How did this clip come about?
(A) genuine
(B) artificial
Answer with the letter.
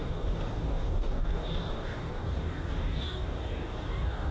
B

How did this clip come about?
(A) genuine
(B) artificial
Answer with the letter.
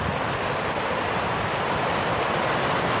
A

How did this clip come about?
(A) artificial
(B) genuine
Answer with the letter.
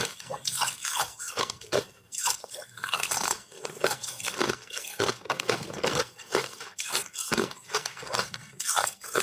A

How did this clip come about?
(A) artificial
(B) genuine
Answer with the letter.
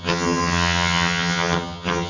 A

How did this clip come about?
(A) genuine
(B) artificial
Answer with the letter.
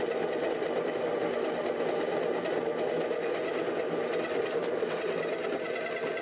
A